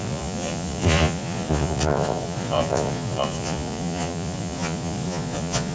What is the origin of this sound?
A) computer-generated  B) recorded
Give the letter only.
A